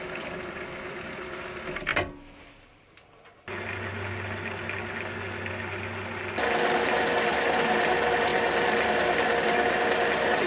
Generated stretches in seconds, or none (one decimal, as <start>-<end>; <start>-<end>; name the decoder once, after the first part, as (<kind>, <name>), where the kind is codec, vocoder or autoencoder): none